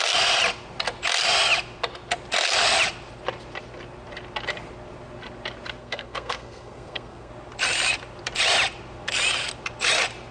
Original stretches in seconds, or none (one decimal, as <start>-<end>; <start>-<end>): 0.0-5.8; 7.3-10.3